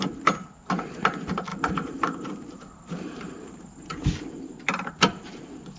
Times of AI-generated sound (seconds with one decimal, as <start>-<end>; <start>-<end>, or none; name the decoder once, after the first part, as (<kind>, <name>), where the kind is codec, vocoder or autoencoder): 1.5-3.9 (vocoder, BigVGAN v2)